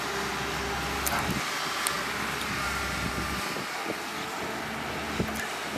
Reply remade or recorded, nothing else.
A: recorded